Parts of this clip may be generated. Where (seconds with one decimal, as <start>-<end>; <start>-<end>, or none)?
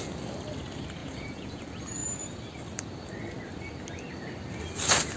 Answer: 1.0-1.6